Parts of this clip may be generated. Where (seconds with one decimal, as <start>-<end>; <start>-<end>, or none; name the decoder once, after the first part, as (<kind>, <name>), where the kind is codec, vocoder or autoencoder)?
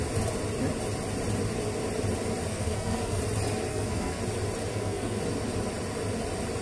2.5-3.2 (codec, SNAC); 3.7-4.2; 4.7-5.2